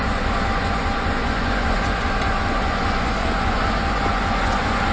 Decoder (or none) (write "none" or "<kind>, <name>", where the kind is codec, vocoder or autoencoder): vocoder, Vocos